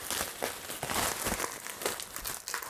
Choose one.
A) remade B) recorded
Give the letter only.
B